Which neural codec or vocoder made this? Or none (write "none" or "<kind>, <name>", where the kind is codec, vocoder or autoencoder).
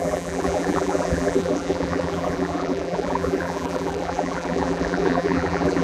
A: vocoder, BigVGAN v2